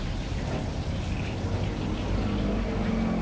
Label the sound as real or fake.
real